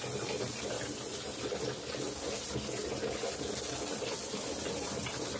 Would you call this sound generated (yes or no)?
no